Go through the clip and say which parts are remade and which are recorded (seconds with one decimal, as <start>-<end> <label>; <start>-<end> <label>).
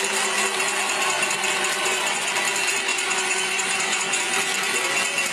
0.0-1.8 recorded; 1.8-2.3 remade; 2.3-2.9 recorded; 2.9-4.2 remade; 4.2-5.3 recorded